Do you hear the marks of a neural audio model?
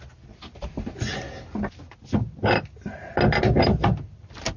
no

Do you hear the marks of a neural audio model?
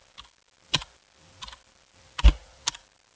no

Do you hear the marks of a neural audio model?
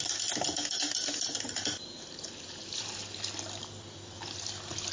no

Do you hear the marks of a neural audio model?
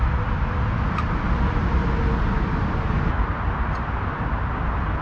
no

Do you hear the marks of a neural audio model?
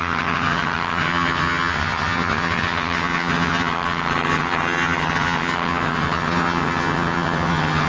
yes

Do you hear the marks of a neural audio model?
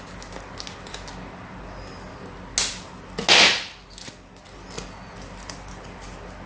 no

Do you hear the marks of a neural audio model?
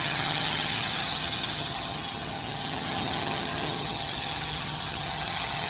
yes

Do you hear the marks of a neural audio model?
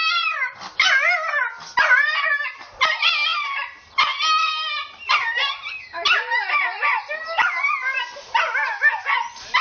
no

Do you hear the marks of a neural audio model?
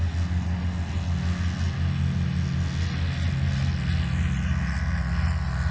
no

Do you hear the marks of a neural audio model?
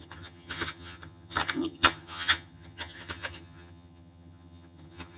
yes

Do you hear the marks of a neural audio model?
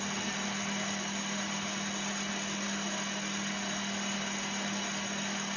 no